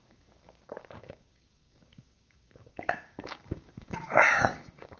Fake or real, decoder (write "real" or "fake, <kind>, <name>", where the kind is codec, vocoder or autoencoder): fake, codec, DAC